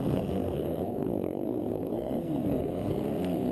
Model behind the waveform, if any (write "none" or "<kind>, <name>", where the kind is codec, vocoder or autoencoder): codec, SNAC